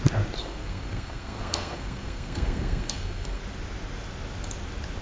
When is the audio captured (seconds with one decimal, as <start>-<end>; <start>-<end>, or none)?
0.0-0.4; 3.4-5.0